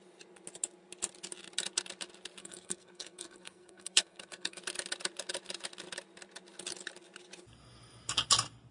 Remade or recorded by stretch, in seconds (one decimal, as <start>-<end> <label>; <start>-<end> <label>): 0.0-2.4 recorded; 2.4-4.6 remade; 4.6-8.7 recorded